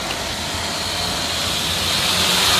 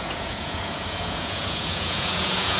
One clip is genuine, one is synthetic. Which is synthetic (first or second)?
second